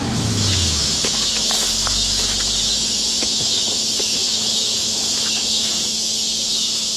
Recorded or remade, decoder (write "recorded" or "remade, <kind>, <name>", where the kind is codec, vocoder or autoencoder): remade, autoencoder, DAC-VAE